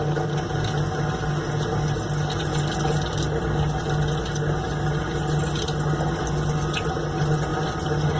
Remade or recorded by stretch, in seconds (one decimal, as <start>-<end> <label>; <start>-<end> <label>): 0.0-8.2 recorded